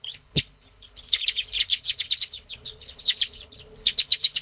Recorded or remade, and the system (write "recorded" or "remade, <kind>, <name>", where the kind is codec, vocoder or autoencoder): remade, codec, HILCodec